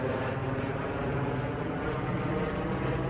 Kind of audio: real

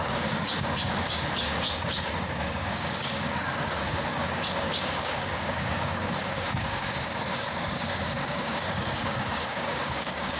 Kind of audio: fake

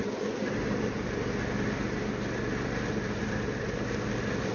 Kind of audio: real